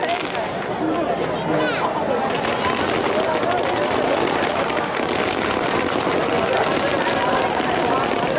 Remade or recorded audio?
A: recorded